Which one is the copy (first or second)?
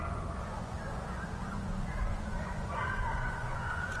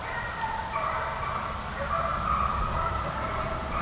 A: first